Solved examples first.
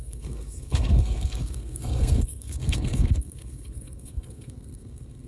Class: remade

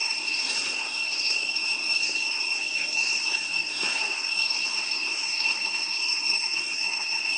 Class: remade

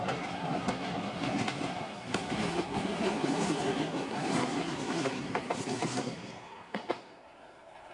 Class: remade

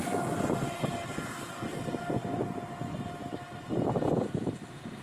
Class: recorded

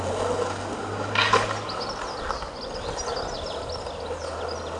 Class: recorded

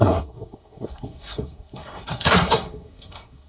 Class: remade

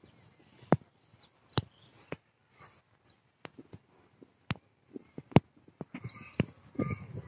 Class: recorded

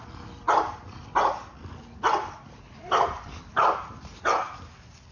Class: recorded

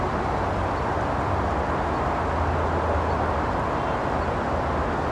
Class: recorded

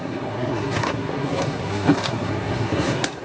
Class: remade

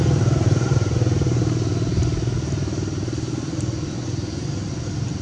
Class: recorded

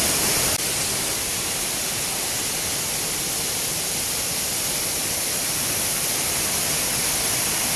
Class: recorded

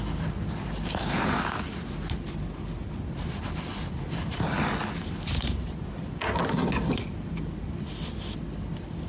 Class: recorded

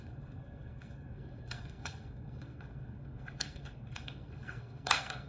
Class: remade